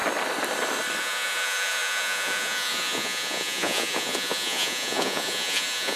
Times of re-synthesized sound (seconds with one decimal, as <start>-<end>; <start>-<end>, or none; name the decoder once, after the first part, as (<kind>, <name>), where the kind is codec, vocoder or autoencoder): 1.0-6.0 (vocoder, Vocos)